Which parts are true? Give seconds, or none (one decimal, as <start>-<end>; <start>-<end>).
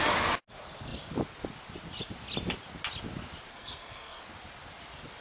0.0-3.5; 4.2-5.2